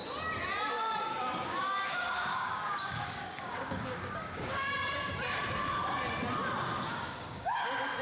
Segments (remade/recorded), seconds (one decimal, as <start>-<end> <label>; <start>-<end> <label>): 0.0-1.1 recorded; 1.1-5.1 remade; 5.1-6.9 recorded; 6.9-7.6 remade; 7.6-8.0 recorded